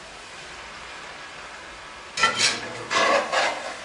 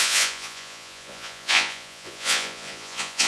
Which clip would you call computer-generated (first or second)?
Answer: second